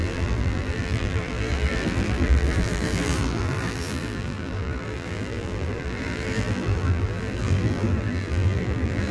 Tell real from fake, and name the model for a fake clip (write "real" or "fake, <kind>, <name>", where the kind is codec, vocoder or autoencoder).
fake, vocoder, BigVGAN v2